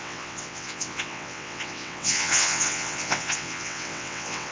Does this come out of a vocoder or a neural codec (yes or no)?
yes